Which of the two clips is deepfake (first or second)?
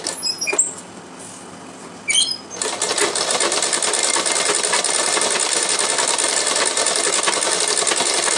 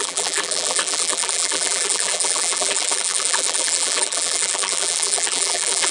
second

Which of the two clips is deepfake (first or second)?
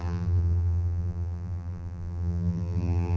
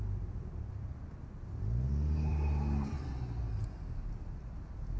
first